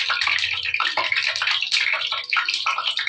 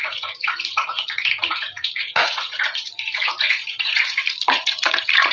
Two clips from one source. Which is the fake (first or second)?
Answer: second